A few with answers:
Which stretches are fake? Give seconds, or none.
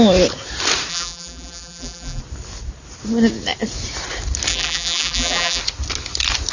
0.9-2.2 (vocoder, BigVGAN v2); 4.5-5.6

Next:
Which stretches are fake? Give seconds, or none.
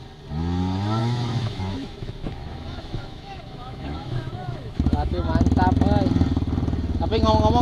1.0-5.3 (autoencoder, DAC-VAE)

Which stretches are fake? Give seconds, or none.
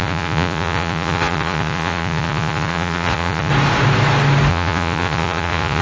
0.0-3.5 (vocoder, Vocos); 4.5-5.8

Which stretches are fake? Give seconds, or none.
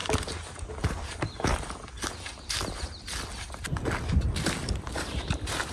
0.7-1.5 (vocoder, BigVGAN v2); 4.9-5.7